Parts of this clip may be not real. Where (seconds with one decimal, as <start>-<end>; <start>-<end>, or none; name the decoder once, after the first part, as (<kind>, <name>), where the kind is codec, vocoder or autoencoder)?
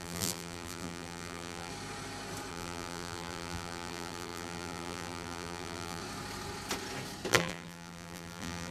0.0-1.7 (vocoder, BigVGAN v2); 2.5-6.0; 7.3-8.7